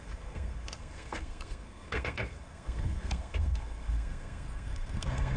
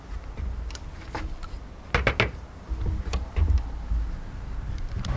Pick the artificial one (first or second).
first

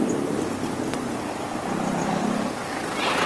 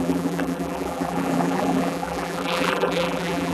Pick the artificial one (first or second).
second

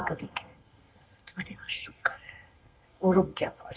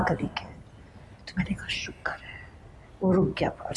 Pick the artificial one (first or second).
first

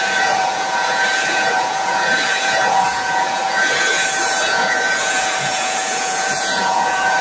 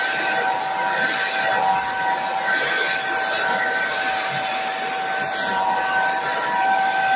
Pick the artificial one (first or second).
first